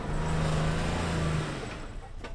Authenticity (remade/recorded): recorded